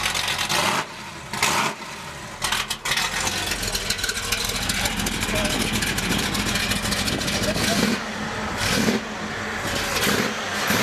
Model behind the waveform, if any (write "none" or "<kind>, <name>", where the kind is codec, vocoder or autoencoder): none